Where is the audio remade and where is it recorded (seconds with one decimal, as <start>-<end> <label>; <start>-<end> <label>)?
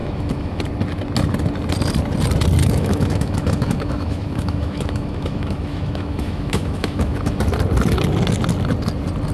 0.0-0.6 remade; 0.6-2.6 recorded; 2.6-7.4 remade; 7.4-9.3 recorded